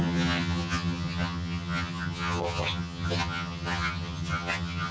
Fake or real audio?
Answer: fake